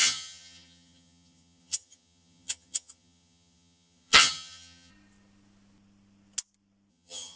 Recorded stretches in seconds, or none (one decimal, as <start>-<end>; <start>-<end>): 4.9-6.9